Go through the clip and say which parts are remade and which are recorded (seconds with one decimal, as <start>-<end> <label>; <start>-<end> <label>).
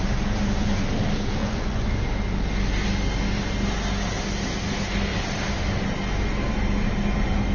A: 0.0-1.4 recorded; 1.4-2.0 remade; 2.0-7.5 recorded